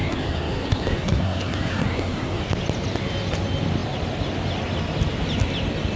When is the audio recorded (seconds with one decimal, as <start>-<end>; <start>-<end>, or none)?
2.4-6.0